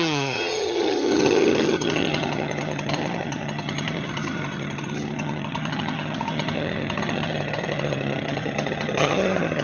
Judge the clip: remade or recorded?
remade